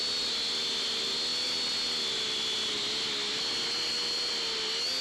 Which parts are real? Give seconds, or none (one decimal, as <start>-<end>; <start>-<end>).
0.0-5.0